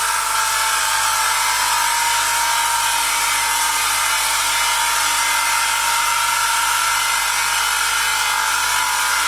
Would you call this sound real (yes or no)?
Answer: yes